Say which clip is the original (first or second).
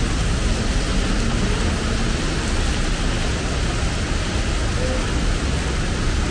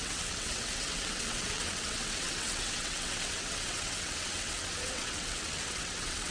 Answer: first